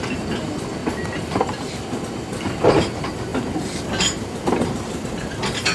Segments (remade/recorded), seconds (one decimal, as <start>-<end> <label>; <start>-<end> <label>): 0.0-5.7 recorded